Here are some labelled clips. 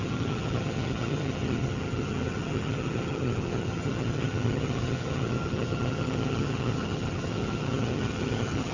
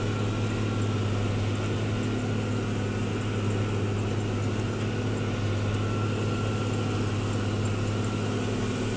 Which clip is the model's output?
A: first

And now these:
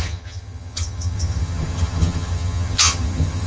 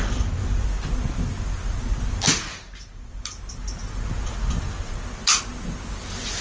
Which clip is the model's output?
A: first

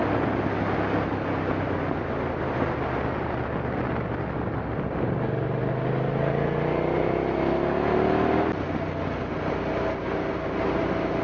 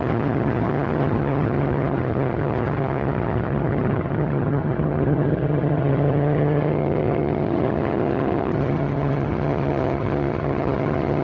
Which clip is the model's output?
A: second